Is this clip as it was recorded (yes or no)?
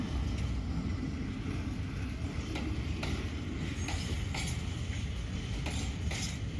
yes